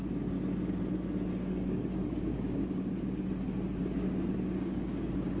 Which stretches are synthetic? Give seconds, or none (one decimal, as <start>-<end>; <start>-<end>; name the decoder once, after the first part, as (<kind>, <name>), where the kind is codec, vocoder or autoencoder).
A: 1.3-3.3 (codec, DAC); 3.8-5.4

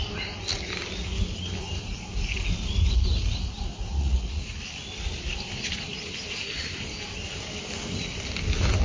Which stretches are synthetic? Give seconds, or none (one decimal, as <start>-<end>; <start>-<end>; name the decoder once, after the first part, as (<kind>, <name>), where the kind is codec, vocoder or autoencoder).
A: 3.9-4.6 (vocoder, Vocos)

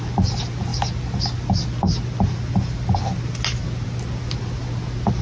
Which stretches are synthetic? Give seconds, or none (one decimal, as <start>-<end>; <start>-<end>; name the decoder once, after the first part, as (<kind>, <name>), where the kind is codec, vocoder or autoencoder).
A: none

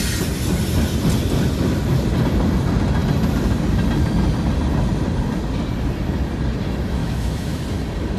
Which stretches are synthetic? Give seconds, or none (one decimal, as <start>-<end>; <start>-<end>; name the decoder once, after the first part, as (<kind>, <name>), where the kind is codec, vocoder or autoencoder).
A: 7.0-7.6 (autoencoder, DAC-VAE)

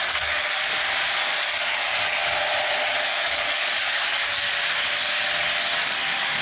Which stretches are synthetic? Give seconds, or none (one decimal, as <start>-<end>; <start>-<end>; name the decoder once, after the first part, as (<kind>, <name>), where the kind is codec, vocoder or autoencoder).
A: 0.0-0.7 (codec, DAC); 1.4-2.2; 3.1-4.6; 5.8-6.4

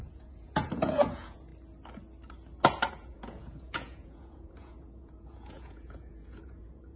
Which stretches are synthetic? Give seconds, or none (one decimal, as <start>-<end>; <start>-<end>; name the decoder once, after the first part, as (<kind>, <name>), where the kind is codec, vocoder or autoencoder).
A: 0.0-1.5 (vocoder, Vocos); 2.9-7.0

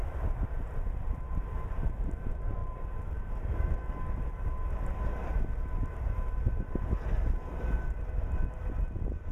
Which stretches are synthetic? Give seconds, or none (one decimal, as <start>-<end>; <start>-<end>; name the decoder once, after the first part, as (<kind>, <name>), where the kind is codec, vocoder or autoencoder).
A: 0.0-1.9 (vocoder, BigVGAN v2); 2.6-3.7; 5.3-6.0